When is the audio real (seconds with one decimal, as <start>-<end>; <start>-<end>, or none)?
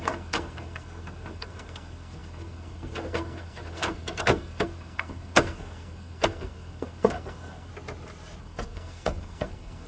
7.7-8.4